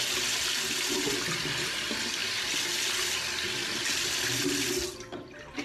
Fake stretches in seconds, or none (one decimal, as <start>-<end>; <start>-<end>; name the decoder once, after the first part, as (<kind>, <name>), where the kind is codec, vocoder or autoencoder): none